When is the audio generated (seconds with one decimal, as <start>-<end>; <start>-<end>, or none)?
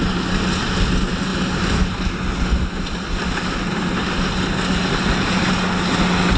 none